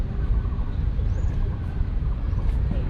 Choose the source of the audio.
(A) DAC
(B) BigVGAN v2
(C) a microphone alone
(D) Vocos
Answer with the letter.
B